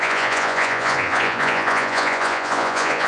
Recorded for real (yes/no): no